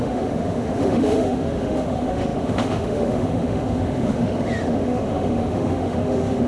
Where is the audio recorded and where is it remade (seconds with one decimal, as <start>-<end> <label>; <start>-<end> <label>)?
0.0-6.5 remade